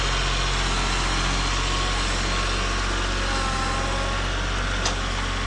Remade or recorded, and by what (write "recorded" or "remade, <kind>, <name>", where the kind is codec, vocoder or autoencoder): recorded